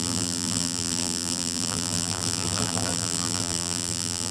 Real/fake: fake